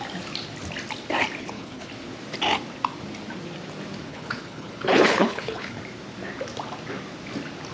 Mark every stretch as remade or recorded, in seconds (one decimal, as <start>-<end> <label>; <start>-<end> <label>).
0.0-1.4 recorded; 1.4-1.9 remade; 1.9-4.1 recorded; 4.1-5.8 remade; 5.8-7.7 recorded